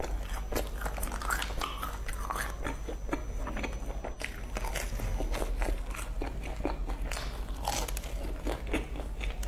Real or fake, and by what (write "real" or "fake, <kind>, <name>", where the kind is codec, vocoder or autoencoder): real